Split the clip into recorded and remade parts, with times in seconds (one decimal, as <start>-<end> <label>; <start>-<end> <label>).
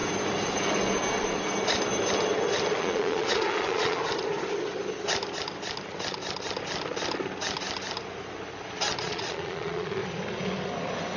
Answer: 0.0-2.8 recorded; 2.8-4.0 remade; 4.0-9.0 recorded; 9.0-10.0 remade; 10.0-11.2 recorded